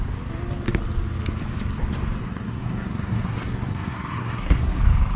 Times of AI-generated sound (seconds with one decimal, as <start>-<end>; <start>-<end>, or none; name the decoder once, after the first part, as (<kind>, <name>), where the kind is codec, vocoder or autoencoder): 2.2-4.8 (codec, SNAC)